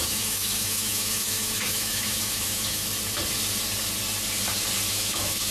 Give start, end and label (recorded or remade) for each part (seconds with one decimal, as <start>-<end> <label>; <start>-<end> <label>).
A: 0.0-2.9 remade; 2.9-4.9 recorded; 4.9-5.5 remade